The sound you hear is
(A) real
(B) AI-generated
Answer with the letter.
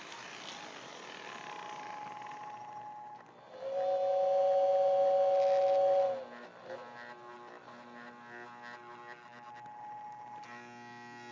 A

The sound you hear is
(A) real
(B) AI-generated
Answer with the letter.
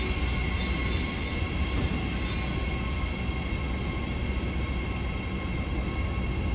A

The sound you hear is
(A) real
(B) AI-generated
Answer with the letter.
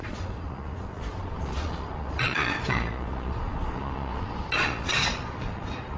B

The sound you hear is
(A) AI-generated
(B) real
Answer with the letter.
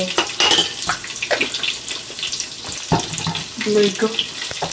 B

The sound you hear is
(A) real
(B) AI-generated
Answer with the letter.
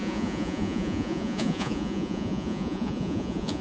B